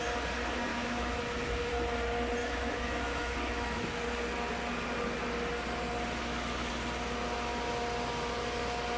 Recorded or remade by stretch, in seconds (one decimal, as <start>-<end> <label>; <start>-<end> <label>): 0.0-0.7 recorded; 0.7-1.7 remade; 1.7-2.4 recorded; 2.4-4.0 remade; 4.0-6.2 recorded; 6.2-6.7 remade; 6.7-9.0 recorded